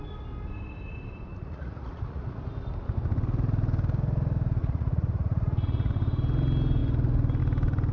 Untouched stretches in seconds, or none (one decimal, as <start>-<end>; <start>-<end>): 0.0-1.3; 2.4-4.6; 5.9-7.9